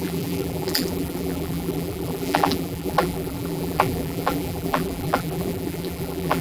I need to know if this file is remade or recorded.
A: remade